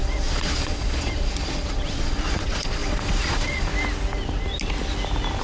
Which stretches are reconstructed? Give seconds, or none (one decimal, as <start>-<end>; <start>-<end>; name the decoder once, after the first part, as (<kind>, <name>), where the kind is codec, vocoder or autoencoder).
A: 0.0-3.7 (vocoder, Vocos)